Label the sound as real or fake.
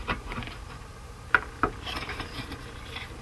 fake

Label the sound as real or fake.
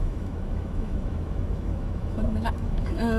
fake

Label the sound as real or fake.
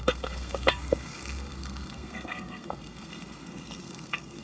fake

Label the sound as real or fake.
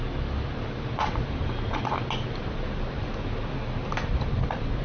real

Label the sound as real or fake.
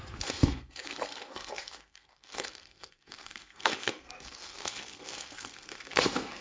fake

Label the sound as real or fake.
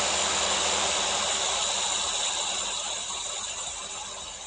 real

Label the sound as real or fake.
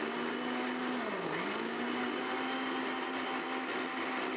real